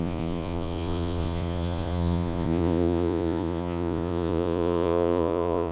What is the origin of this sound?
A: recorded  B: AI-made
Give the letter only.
B